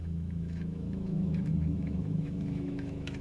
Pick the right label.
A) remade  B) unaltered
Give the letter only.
A